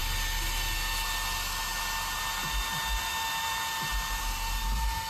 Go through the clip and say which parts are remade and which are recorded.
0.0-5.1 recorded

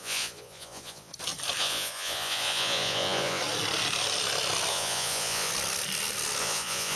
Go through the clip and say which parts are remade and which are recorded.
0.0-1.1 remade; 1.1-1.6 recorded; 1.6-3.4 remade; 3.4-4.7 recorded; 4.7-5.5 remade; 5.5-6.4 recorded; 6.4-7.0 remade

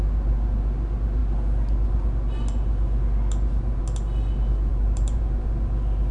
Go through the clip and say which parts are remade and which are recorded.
0.0-4.7 recorded; 4.7-5.2 remade; 5.2-6.1 recorded